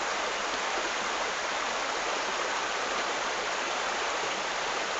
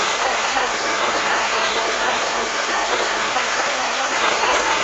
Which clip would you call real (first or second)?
first